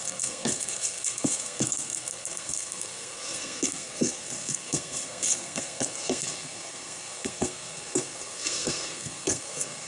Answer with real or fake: fake